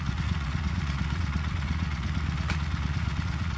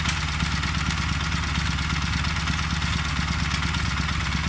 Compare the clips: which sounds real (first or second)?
second